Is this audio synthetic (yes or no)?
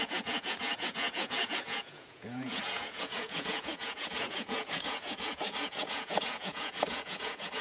yes